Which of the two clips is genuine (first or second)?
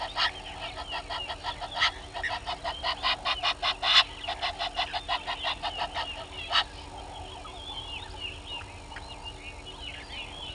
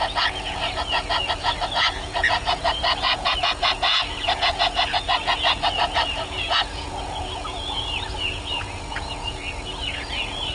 first